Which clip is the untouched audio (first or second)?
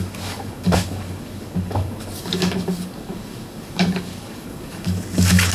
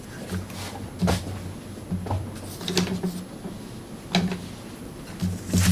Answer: second